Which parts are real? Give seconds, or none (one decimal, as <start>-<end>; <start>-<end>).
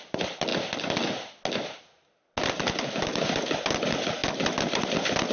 0.0-5.3